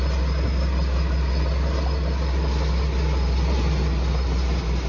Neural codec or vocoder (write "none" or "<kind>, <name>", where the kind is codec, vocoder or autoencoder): none